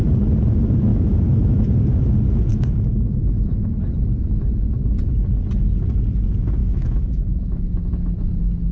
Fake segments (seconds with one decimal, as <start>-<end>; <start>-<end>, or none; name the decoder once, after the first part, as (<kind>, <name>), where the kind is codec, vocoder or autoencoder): 0.9-1.7 (autoencoder, DAC-VAE); 2.5-3.7; 6.6-7.9